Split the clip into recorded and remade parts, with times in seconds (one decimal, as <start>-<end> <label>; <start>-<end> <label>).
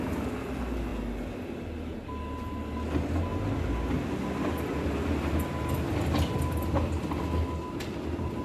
0.0-8.4 recorded